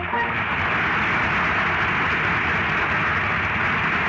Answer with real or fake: real